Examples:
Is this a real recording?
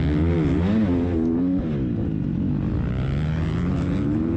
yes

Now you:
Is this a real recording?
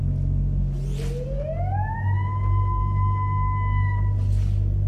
yes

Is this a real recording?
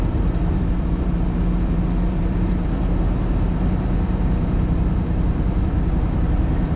no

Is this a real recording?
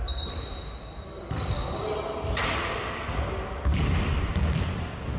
yes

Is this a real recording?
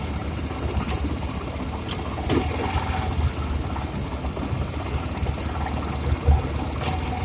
yes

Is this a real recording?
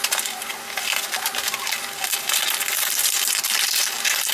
yes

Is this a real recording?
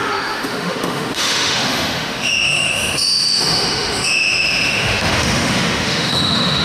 no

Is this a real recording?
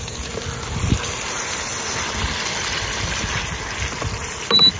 yes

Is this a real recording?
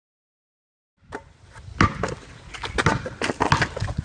yes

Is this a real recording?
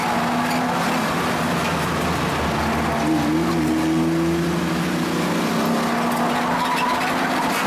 yes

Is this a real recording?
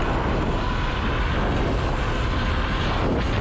yes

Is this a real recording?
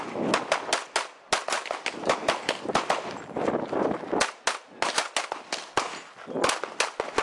yes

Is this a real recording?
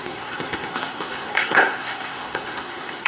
no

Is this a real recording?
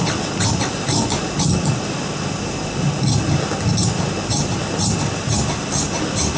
yes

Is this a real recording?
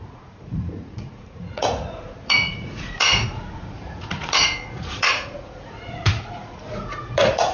no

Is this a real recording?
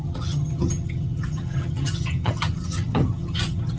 no